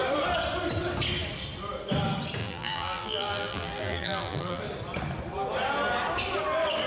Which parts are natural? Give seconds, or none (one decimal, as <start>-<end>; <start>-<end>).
0.0-2.4; 4.6-6.9